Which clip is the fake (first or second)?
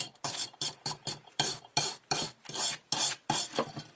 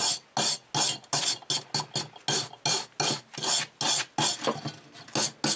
first